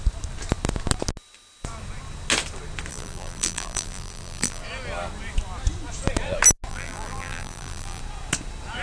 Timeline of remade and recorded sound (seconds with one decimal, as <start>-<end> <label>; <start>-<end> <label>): 0.0-2.9 recorded; 2.9-4.6 remade; 4.6-6.7 recorded; 6.7-8.0 remade; 8.0-8.8 recorded